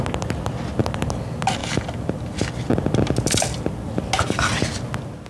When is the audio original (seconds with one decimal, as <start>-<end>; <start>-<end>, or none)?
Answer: 0.0-5.3